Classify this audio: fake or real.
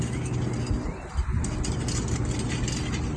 real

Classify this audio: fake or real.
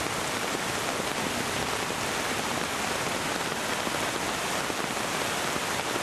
real